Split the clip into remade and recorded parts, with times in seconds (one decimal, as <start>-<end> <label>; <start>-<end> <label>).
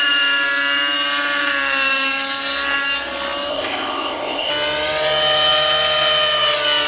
0.0-3.5 recorded; 3.5-4.5 remade; 4.5-6.9 recorded